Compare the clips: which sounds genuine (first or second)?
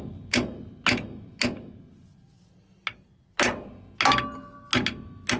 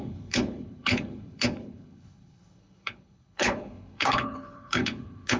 first